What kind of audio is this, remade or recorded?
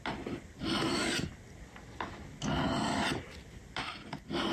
recorded